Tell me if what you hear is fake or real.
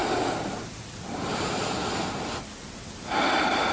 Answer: real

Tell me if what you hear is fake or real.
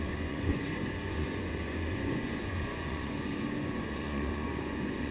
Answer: fake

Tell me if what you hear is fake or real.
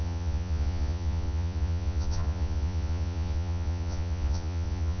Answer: fake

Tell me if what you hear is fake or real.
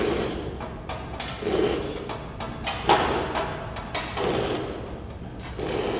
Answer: real